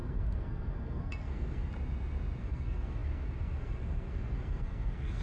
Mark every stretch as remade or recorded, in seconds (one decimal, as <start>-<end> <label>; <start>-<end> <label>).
0.0-1.7 remade; 1.7-2.4 recorded; 2.4-5.2 remade